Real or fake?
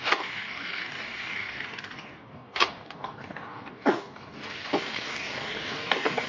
fake